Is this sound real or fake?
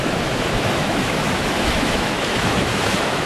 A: fake